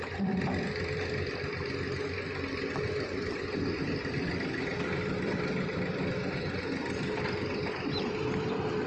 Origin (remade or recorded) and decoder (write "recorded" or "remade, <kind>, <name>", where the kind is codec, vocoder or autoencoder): recorded